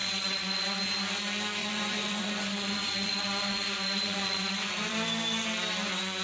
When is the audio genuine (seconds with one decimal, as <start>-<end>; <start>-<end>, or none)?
0.8-1.6; 4.9-6.2